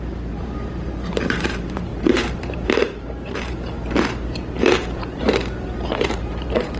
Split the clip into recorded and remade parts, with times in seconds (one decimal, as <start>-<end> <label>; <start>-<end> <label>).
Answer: 0.0-6.8 remade